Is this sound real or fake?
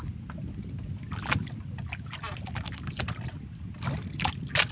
real